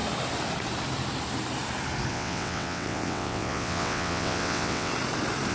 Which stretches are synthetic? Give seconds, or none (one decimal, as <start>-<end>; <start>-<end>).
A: 2.1-4.9